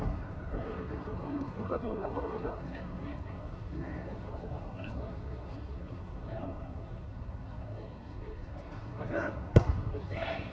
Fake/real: fake